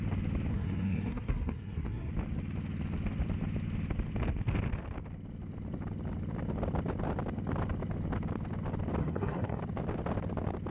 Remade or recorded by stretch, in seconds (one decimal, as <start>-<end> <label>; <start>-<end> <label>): 0.0-0.5 recorded; 0.5-2.1 remade; 2.1-9.0 recorded; 9.0-9.6 remade; 9.6-10.7 recorded